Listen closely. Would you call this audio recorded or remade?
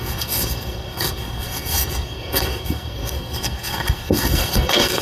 remade